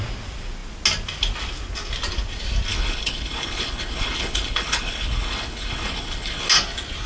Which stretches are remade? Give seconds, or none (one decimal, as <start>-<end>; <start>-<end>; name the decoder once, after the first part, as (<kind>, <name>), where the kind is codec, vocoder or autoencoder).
2.7-6.5 (codec, HILCodec)